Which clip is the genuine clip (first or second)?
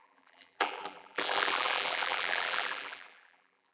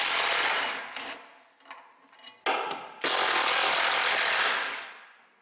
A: second